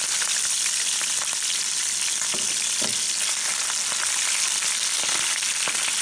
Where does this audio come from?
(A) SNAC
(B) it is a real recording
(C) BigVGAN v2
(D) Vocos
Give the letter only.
B